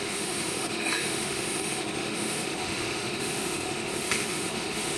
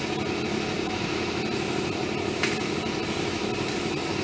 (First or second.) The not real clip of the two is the first